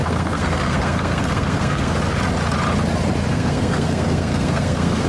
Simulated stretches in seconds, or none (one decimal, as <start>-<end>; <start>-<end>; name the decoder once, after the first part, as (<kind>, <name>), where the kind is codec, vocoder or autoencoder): 0.0-1.9 (codec, SNAC); 3.3-5.1